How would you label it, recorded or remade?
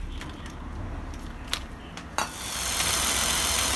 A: recorded